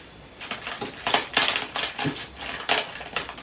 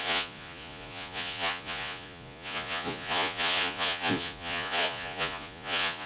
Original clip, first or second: first